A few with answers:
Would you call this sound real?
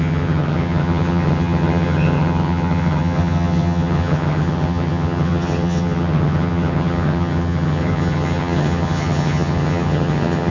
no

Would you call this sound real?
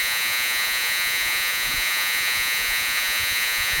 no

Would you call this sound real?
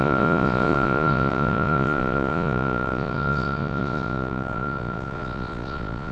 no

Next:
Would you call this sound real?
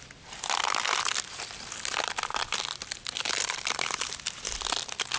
yes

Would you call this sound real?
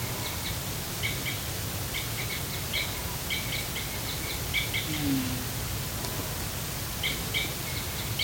yes